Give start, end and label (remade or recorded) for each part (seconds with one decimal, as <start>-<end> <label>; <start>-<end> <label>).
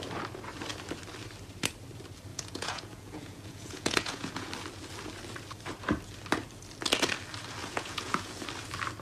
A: 0.0-2.3 recorded; 2.3-4.5 remade; 4.5-7.6 recorded; 7.6-8.4 remade; 8.4-9.0 recorded